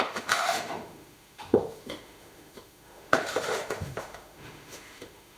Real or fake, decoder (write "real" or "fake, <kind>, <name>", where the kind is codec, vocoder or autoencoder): fake, autoencoder, DAC-VAE